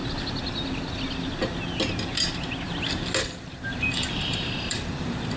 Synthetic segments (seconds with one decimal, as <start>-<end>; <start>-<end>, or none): 3.2-5.4